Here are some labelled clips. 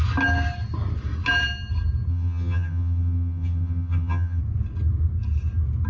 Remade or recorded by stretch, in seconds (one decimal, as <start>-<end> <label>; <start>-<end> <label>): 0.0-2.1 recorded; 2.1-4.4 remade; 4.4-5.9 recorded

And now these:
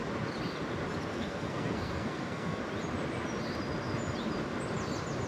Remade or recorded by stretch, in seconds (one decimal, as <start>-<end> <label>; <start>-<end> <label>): 0.0-1.1 recorded; 1.1-2.6 remade; 2.6-5.3 recorded

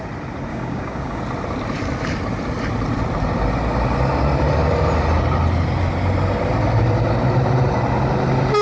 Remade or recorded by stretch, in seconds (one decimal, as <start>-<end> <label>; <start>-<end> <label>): 0.0-0.5 recorded; 0.5-1.2 remade; 1.2-8.6 recorded

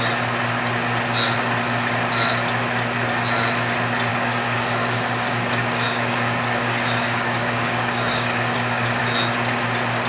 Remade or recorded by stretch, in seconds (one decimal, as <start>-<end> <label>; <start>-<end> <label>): 0.0-4.1 recorded; 4.1-9.0 remade; 9.0-10.1 recorded

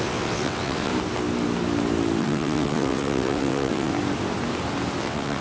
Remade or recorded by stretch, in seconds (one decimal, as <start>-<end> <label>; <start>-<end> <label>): 0.0-0.9 remade; 0.9-2.2 recorded; 2.2-3.9 remade; 3.9-5.0 recorded; 5.0-5.4 remade